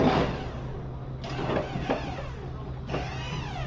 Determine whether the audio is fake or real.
real